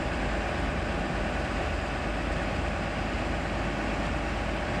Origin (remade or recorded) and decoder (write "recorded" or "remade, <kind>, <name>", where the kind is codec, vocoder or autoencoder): recorded